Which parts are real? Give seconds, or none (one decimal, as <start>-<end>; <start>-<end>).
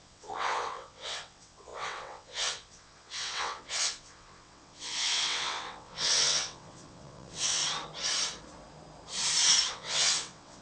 7.6-9.7